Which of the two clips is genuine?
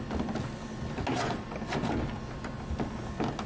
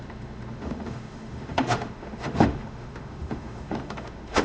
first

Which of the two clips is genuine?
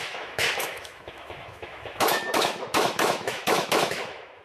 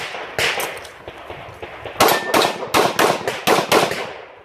second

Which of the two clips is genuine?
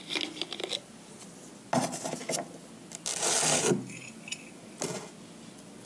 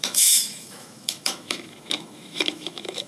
first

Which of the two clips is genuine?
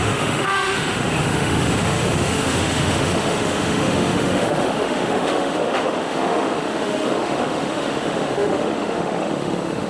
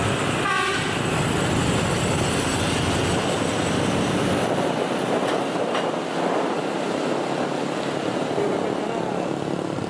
second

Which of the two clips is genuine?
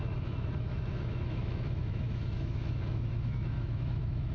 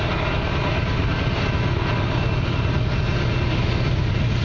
second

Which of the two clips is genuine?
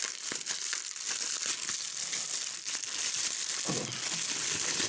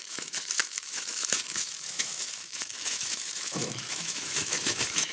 first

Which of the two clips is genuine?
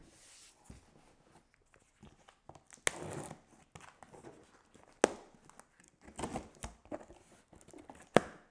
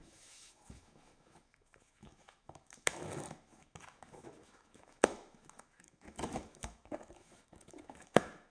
first